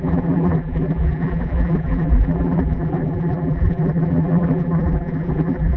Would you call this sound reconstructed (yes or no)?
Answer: yes